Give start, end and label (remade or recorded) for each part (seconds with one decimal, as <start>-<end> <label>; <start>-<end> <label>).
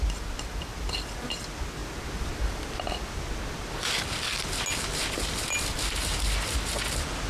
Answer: 0.0-7.3 recorded